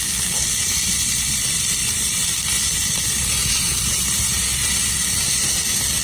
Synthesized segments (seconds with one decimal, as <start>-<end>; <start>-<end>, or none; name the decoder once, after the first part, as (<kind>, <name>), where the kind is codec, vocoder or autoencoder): 3.7-4.4 (vocoder, BigVGAN v2)